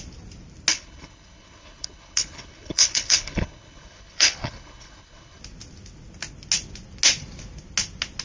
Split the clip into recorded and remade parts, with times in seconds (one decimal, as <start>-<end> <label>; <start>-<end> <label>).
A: 0.0-0.7 recorded; 0.7-5.4 remade; 5.4-8.2 recorded